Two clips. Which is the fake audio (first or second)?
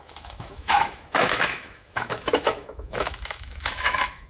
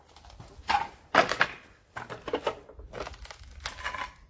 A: first